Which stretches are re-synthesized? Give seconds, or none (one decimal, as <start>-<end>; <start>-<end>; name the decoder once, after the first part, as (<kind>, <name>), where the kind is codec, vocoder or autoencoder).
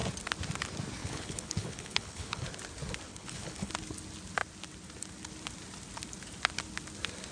1.0-2.5 (codec, HILCodec); 3.1-3.7